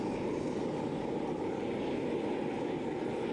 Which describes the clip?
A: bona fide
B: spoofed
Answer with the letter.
A